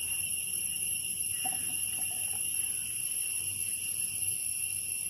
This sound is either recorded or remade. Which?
recorded